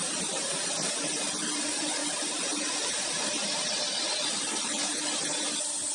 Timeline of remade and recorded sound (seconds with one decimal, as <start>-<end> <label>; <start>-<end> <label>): 0.0-2.0 recorded; 2.0-3.7 remade; 3.7-5.9 recorded